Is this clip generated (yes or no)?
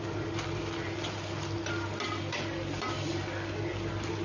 no